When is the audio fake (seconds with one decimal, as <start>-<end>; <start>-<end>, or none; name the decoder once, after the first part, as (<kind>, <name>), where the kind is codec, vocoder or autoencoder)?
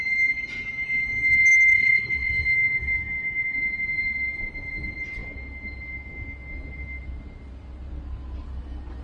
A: 1.7-2.3 (codec, HILCodec)